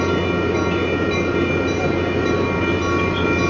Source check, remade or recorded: recorded